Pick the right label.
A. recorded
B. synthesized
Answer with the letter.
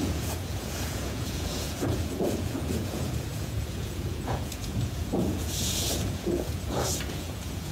B